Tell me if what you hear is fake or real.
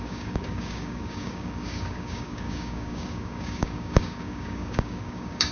fake